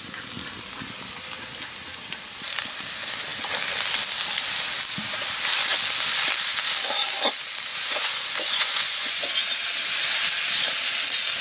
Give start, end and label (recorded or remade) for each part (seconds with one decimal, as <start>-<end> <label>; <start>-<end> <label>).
0.0-7.7 recorded; 7.7-9.3 remade; 9.3-11.4 recorded